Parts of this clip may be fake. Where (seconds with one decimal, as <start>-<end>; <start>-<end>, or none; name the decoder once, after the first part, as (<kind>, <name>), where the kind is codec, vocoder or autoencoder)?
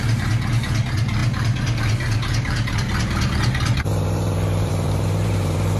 0.0-5.8 (vocoder, BigVGAN v2)